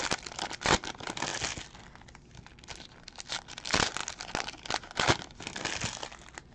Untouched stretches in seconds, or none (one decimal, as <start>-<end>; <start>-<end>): 0.0-6.5